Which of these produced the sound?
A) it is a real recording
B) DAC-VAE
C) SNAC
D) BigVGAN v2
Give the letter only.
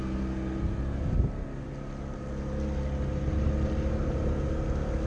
A